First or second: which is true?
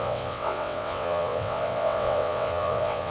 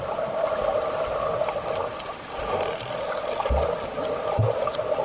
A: second